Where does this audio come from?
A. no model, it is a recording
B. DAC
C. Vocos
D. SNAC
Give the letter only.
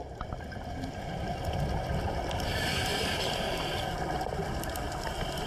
A